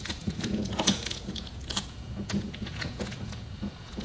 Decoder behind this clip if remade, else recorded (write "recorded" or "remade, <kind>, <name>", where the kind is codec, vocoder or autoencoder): remade, vocoder, Vocos